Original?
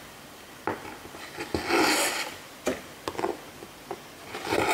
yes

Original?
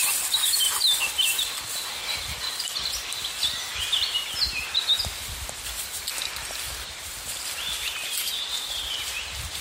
yes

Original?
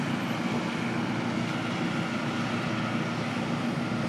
yes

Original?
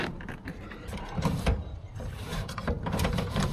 no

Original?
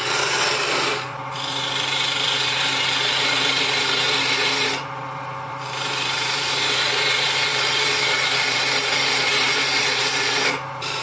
no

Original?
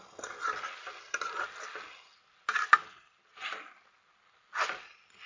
yes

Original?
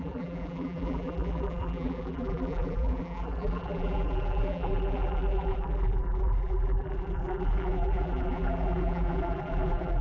no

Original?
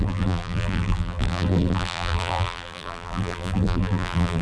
no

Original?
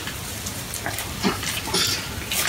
no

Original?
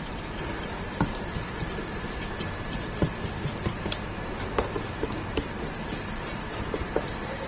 no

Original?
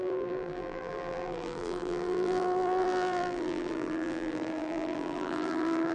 no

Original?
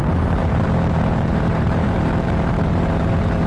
no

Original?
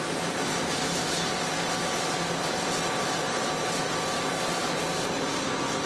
yes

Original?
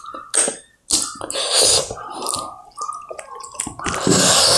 yes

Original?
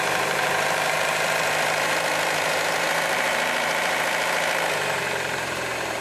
no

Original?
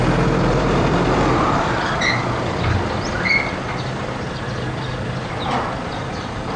no